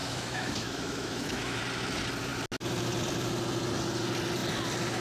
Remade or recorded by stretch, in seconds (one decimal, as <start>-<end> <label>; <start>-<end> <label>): 0.0-1.6 remade; 1.6-5.0 recorded